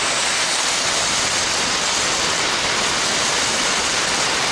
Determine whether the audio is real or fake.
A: real